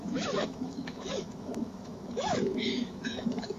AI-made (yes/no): yes